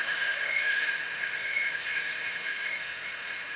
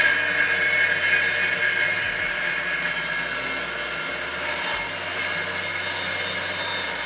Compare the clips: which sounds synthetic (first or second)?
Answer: first